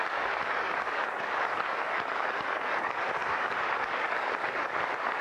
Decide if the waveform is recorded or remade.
remade